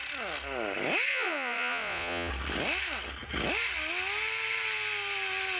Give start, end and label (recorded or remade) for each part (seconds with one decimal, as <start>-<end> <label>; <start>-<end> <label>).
0.0-1.1 recorded; 1.1-2.3 remade; 2.3-5.6 recorded